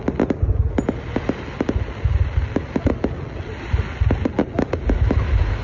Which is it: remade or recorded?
recorded